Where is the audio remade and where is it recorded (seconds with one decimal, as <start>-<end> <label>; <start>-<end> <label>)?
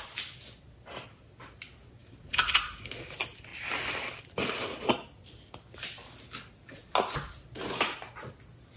0.0-8.8 recorded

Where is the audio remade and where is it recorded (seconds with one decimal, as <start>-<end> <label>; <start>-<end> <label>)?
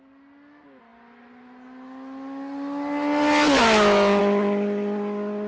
0.0-5.5 recorded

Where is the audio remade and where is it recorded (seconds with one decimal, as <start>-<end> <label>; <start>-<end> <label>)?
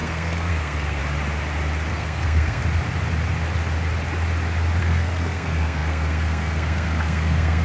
0.0-1.0 remade; 1.0-1.9 recorded; 1.9-2.6 remade; 2.6-4.8 recorded; 4.8-7.6 remade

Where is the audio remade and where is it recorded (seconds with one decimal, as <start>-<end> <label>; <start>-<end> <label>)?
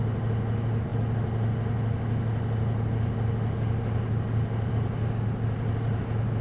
0.0-6.4 recorded